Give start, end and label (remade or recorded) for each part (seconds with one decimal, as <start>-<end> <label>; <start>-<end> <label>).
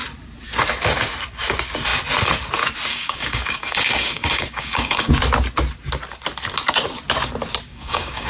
0.0-2.9 recorded; 2.9-5.1 remade; 5.1-7.7 recorded; 7.7-8.3 remade